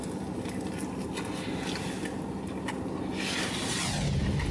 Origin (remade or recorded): recorded